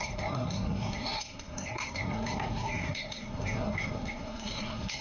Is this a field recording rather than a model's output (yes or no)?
no